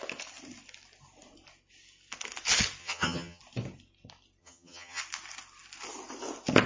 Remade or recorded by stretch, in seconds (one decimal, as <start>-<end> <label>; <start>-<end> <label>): 0.0-2.8 recorded; 2.8-3.4 remade; 3.4-4.4 recorded; 4.4-5.0 remade; 5.0-6.7 recorded